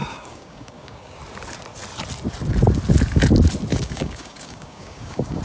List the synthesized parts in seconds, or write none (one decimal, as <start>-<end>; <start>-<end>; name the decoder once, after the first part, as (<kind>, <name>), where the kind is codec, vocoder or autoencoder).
0.0-1.2 (codec, DAC); 3.7-5.4